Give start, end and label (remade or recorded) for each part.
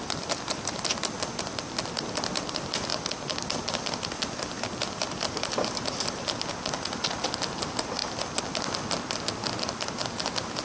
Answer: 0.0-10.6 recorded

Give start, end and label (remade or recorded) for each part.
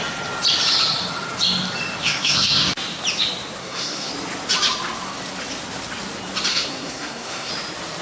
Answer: 0.0-2.0 recorded; 2.0-2.7 remade; 2.7-3.6 recorded; 3.6-4.1 remade; 4.1-6.5 recorded; 6.5-7.5 remade; 7.5-8.0 recorded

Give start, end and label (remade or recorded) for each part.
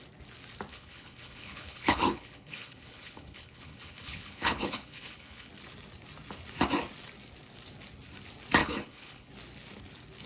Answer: 0.0-0.7 recorded; 0.7-5.5 remade; 5.5-8.6 recorded; 8.6-9.3 remade; 9.3-10.3 recorded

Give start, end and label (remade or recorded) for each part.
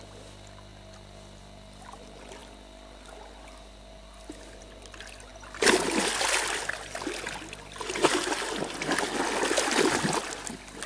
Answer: 0.0-10.9 recorded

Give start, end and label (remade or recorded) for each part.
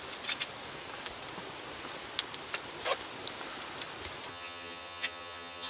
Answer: 0.0-4.3 recorded; 4.3-5.7 remade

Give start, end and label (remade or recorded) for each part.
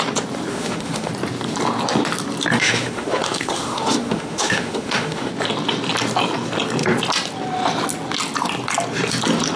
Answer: 0.0-0.5 recorded; 0.5-1.1 remade; 1.1-2.5 recorded; 2.5-5.3 remade; 5.3-9.6 recorded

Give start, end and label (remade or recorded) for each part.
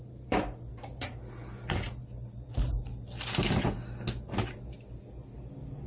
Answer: 0.0-1.1 remade; 1.1-2.0 recorded; 2.0-2.9 remade; 2.9-5.9 recorded